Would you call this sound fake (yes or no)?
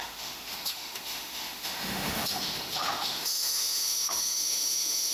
yes